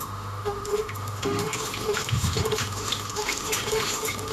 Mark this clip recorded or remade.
remade